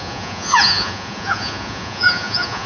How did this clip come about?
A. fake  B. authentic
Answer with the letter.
A